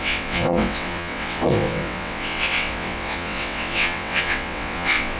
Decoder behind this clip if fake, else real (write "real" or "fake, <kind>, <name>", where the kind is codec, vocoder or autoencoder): fake, vocoder, WaveNeXt